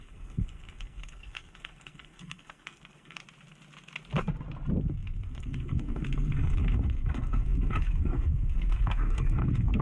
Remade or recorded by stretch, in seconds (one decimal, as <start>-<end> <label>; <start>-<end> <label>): 0.0-3.2 remade; 3.2-4.8 recorded; 4.8-9.8 remade